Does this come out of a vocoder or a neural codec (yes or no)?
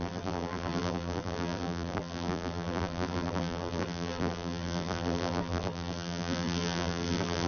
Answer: yes